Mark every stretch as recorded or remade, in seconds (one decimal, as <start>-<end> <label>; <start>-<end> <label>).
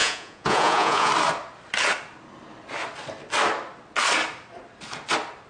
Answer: 0.0-1.1 remade; 1.1-5.5 recorded